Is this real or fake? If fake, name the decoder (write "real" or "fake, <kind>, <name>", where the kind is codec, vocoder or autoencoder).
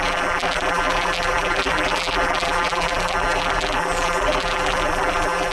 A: fake, vocoder, BigVGAN v2